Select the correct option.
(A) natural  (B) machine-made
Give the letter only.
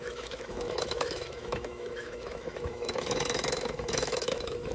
B